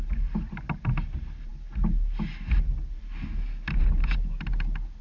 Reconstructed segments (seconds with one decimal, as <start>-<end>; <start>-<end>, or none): none